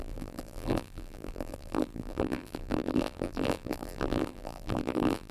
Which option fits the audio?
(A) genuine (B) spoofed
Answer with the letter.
B